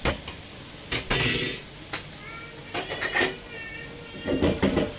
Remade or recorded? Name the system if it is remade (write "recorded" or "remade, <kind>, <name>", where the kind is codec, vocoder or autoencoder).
recorded